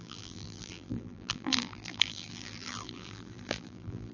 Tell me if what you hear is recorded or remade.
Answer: remade